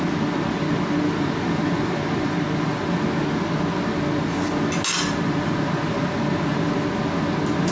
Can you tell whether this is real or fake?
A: real